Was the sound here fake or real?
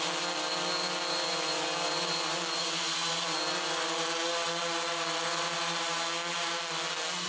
real